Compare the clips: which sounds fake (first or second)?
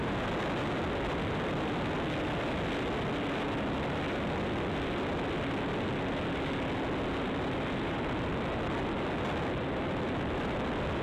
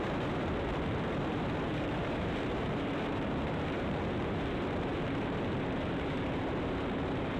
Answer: second